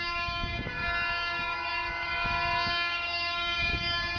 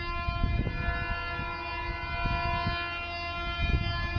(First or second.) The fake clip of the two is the first